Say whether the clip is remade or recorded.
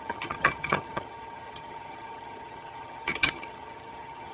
remade